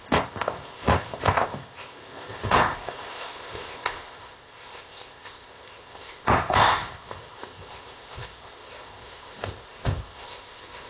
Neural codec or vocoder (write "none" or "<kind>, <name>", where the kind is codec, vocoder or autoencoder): codec, ZipCodec